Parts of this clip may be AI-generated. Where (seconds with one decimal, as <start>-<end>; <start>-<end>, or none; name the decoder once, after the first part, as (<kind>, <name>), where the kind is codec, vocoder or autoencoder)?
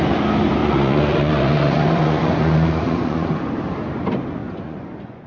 0.6-3.4 (vocoder, Vocos); 4.4-5.3